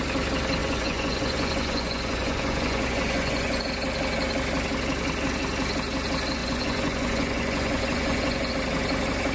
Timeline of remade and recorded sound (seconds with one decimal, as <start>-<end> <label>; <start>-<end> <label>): 0.0-0.6 recorded; 0.6-3.6 remade; 3.6-6.4 recorded; 6.4-8.5 remade; 8.5-9.3 recorded